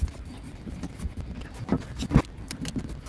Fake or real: real